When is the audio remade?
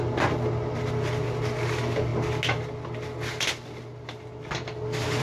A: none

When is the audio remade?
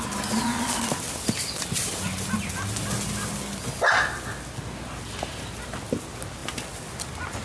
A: none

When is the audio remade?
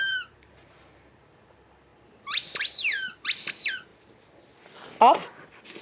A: 0.0-1.9 (vocoder, BigVGAN v2); 3.5-3.9